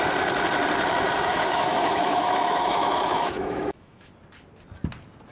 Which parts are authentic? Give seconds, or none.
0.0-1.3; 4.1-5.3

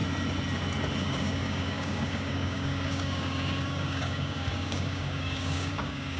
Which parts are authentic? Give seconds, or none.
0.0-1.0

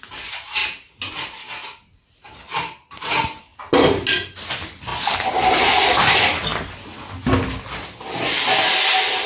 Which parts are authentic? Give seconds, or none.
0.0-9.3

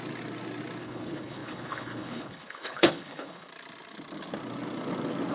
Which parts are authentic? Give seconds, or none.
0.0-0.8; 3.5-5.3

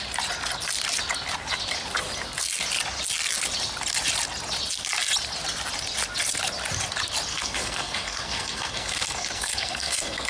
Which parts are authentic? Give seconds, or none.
0.0-7.3

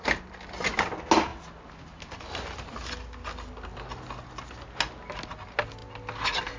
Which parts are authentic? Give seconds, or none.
0.0-6.6

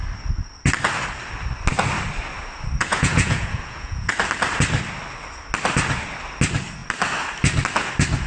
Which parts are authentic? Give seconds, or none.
0.0-2.8; 4.1-8.3